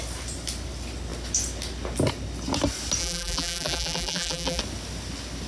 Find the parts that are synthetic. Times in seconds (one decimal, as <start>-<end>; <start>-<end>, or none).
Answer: 3.0-4.6